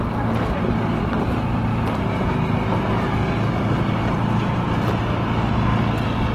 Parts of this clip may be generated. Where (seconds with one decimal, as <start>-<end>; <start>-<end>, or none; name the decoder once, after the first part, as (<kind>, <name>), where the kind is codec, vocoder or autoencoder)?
1.7-2.3 (vocoder, BigVGAN v2)